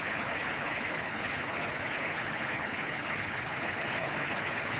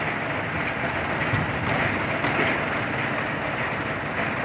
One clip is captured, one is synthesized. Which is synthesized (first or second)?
first